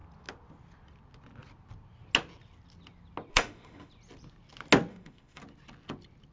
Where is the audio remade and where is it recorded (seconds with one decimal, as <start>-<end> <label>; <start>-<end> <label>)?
0.0-3.3 recorded; 3.3-3.9 remade; 3.9-4.9 recorded; 4.9-5.4 remade; 5.4-6.3 recorded